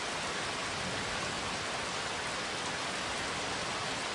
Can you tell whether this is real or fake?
real